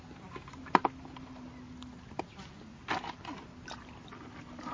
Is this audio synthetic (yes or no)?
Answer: yes